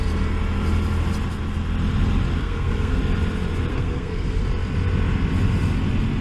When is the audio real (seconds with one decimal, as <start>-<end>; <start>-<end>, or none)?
0.0-2.4; 3.0-3.7; 4.4-6.2